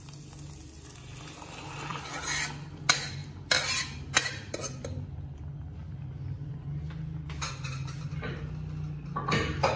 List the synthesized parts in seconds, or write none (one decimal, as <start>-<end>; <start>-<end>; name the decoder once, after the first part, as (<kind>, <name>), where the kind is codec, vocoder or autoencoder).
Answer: 1.9-2.5 (vocoder, BigVGAN v2)